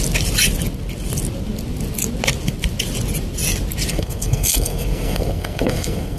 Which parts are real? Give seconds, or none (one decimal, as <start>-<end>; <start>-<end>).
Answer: 0.0-3.9